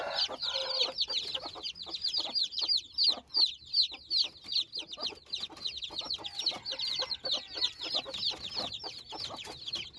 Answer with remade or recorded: recorded